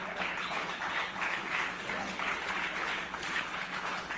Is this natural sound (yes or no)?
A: no